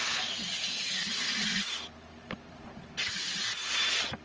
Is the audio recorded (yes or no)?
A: yes